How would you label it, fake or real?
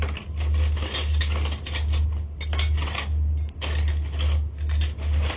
real